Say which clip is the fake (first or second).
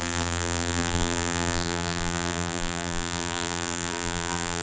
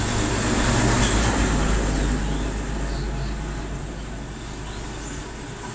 first